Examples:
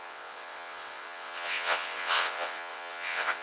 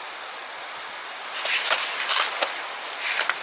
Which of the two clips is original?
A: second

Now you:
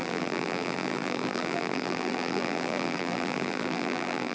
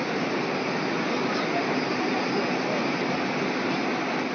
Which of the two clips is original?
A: second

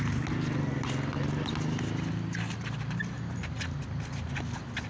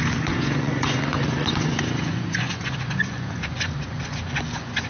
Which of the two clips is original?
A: first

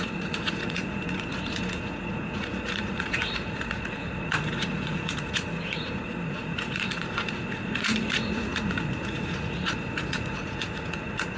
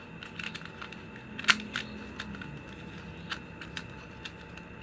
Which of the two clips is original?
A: second